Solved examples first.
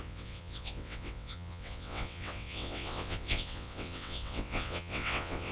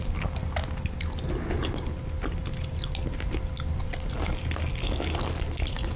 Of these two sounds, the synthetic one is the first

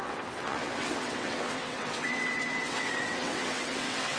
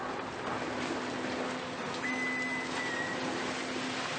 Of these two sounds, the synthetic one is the first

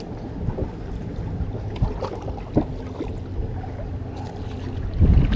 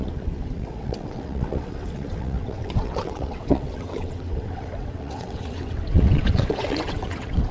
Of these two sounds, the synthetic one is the second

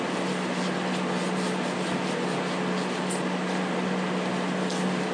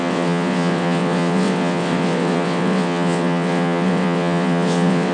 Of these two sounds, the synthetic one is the second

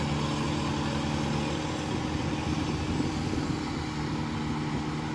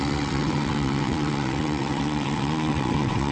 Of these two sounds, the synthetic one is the second